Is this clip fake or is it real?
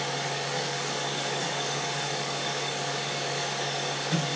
fake